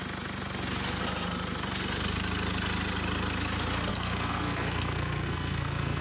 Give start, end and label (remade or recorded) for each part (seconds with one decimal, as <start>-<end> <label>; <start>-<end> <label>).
0.0-3.9 recorded; 3.9-6.0 remade